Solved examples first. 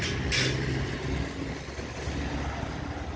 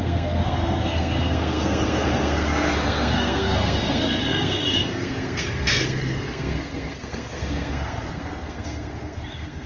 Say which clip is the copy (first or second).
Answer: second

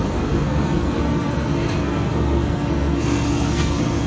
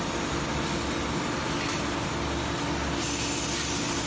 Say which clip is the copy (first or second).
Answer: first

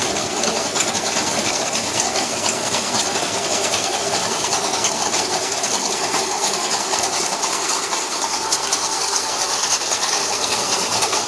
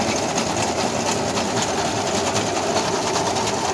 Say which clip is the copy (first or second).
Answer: first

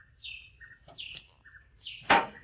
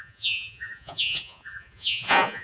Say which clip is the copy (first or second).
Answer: second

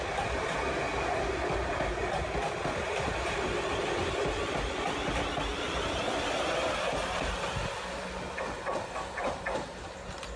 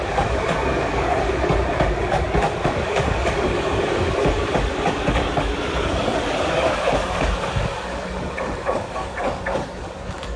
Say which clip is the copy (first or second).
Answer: second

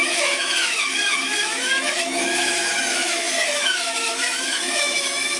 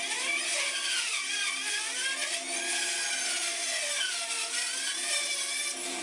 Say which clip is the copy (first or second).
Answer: first